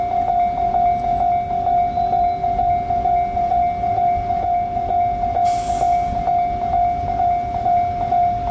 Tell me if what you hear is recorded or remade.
recorded